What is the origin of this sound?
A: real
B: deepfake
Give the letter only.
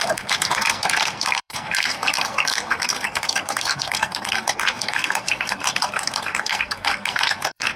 B